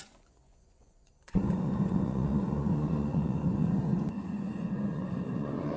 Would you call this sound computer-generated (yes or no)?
yes